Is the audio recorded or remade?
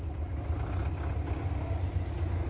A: recorded